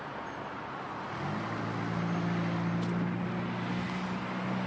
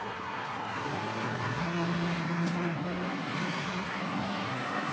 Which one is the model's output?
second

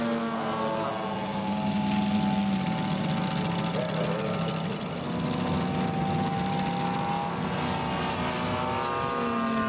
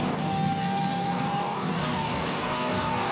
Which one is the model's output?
second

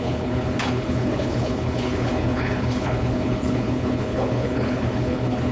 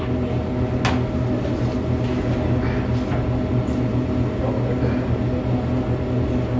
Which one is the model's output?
first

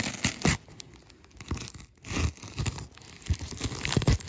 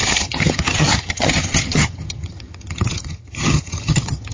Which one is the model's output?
second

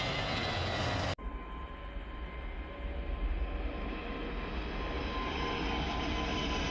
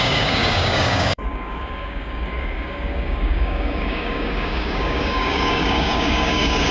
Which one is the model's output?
second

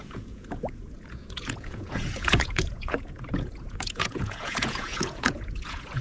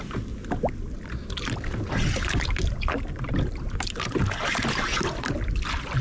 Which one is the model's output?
first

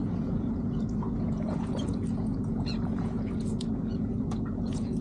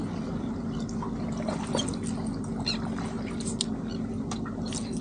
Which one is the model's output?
first